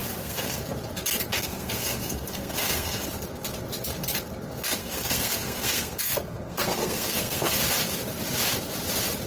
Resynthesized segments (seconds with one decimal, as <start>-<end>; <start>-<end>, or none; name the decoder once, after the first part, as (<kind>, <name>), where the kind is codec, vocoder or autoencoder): 0.0-0.6 (codec, SNAC); 1.3-3.1; 4.8-7.6